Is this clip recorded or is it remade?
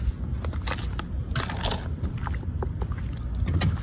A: recorded